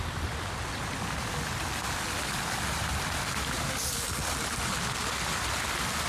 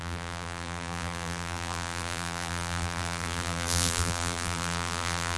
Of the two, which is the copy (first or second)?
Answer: second